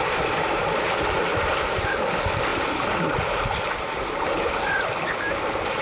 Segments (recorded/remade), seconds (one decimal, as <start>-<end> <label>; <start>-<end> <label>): 0.0-5.8 recorded